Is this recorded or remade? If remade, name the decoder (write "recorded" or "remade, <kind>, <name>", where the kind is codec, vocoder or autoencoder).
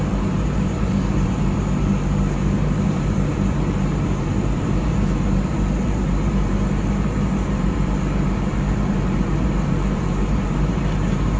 remade, vocoder, BigVGAN v2